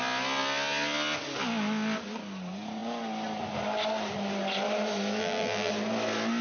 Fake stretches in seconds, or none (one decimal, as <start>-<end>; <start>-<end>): 5.2-5.7